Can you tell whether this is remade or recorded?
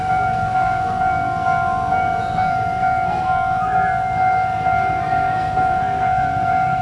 remade